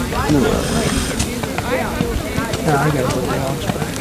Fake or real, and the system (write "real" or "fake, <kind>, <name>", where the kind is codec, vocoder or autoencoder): real